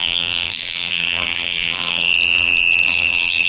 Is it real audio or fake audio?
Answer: fake